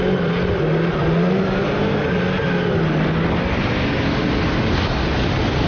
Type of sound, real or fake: real